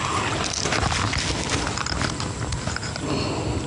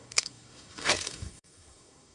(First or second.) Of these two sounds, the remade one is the second